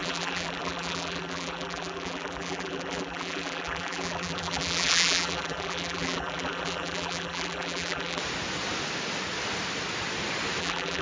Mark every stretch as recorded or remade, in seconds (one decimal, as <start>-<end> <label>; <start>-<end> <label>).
0.0-8.2 remade; 8.2-10.6 recorded; 10.6-11.0 remade